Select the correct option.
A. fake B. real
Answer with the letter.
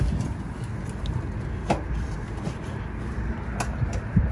B